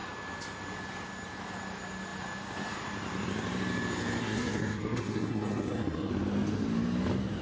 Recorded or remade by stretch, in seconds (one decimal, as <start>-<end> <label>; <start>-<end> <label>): 0.0-4.2 recorded; 4.2-6.1 remade; 6.1-7.4 recorded